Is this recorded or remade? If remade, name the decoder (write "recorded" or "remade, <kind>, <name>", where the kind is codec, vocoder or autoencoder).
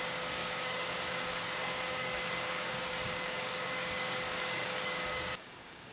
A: remade, codec, DAC